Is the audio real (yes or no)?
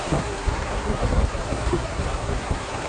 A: no